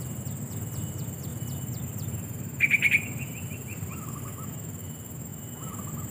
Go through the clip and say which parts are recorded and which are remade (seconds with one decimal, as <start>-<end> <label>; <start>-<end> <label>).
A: 0.0-6.1 remade